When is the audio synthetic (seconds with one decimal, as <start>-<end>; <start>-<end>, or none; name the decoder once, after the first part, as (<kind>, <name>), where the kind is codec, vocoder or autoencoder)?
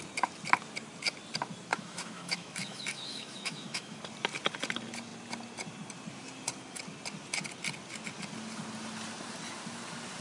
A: 1.7-4.0 (autoencoder, DAC-VAE)